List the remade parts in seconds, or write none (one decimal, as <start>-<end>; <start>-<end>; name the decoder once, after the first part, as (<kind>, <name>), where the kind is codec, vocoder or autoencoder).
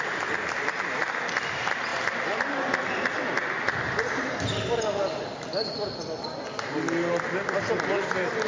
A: none